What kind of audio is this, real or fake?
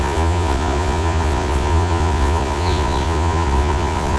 fake